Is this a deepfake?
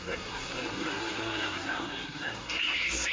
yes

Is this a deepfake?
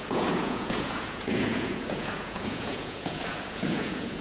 yes